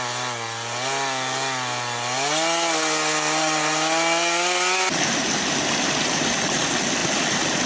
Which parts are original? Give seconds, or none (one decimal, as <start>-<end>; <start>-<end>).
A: 0.0-7.7